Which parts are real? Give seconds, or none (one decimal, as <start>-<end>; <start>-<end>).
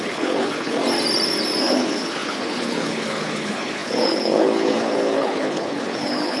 0.8-1.6